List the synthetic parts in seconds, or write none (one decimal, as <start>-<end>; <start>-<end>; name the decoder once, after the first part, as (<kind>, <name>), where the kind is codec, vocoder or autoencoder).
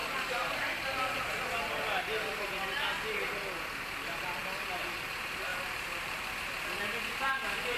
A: 5.5-6.3 (vocoder, BigVGAN v2)